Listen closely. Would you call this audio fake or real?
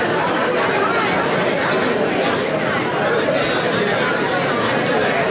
real